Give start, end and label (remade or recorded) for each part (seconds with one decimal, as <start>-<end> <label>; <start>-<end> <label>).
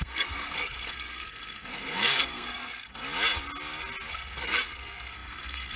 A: 0.0-3.0 remade; 3.0-4.1 recorded; 4.1-5.8 remade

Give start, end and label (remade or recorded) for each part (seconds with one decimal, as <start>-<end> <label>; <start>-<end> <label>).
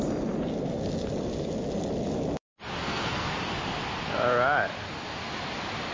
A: 0.0-2.8 recorded; 2.8-3.3 remade; 3.3-5.9 recorded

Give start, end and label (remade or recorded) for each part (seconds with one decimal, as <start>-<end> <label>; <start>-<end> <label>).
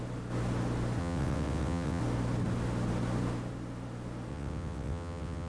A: 0.0-1.0 recorded; 1.0-2.0 remade; 2.0-4.3 recorded; 4.3-5.5 remade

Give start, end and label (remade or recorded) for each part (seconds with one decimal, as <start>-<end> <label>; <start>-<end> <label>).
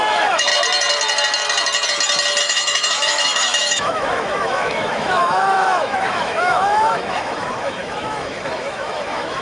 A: 0.0-0.5 remade; 0.5-2.4 recorded; 2.4-9.4 remade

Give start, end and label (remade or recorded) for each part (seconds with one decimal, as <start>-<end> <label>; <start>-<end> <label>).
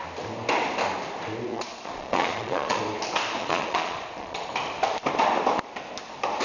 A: 0.0-1.5 recorded; 1.5-2.8 remade; 2.8-3.4 recorded; 3.4-4.5 remade; 4.5-6.4 recorded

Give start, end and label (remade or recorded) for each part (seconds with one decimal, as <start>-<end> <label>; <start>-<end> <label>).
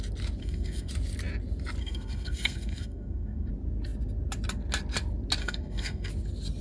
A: 0.0-0.4 recorded; 0.4-0.9 remade; 0.9-1.8 recorded; 1.8-3.5 remade; 3.5-5.4 recorded; 5.4-6.1 remade; 6.1-6.6 recorded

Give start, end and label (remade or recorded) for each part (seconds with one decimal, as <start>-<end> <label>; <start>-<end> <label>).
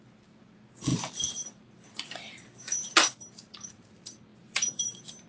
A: 0.0-4.3 recorded; 4.3-5.3 remade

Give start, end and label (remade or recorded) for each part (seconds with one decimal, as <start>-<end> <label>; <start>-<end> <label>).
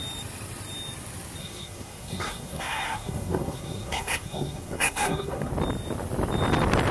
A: 0.0-1.4 recorded; 1.4-5.5 remade; 5.5-6.9 recorded